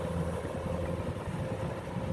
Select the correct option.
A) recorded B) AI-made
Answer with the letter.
A